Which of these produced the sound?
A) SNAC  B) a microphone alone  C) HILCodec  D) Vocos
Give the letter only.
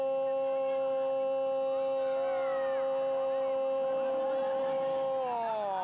B